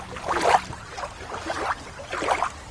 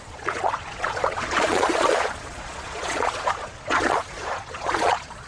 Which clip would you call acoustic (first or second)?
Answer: first